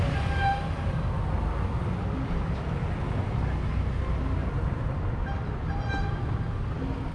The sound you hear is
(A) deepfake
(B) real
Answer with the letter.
B